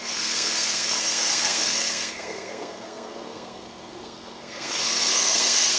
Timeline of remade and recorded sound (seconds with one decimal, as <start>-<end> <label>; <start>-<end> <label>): 0.0-5.8 remade